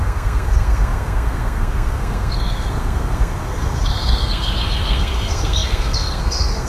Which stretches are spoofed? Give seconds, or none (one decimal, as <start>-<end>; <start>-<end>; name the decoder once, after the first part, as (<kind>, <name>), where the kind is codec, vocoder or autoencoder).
0.0-6.7 (codec, SNAC)